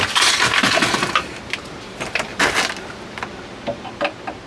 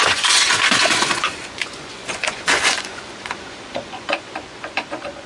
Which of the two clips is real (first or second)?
first